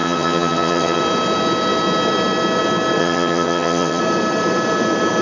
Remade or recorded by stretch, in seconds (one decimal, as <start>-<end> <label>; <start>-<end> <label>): 0.0-1.0 remade; 1.0-3.0 recorded; 3.0-4.0 remade; 4.0-5.2 recorded

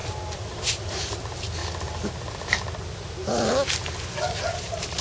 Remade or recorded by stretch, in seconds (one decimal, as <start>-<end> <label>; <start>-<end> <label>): 0.0-5.0 recorded

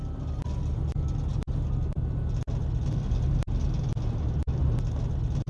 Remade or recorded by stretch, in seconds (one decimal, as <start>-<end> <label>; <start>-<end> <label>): 0.0-5.5 recorded

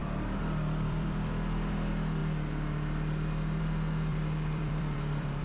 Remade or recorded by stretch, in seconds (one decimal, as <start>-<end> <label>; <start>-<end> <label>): 0.0-1.7 remade; 1.7-4.1 recorded; 4.1-5.4 remade